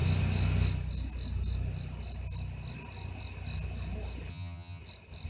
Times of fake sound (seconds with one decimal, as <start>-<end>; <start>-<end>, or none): 4.3-4.8